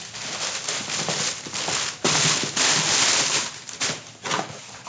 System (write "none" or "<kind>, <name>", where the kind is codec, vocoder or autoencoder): none